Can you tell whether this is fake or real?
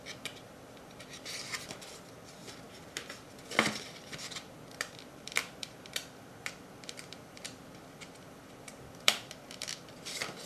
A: fake